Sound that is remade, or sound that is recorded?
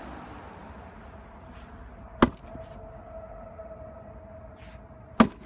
recorded